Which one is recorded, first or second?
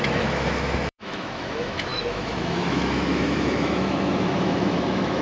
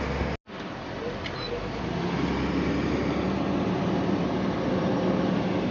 second